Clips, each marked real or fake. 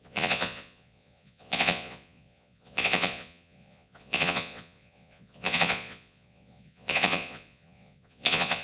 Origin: fake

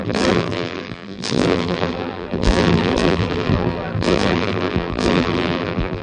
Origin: fake